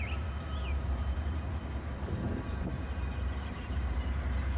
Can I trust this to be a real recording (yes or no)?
no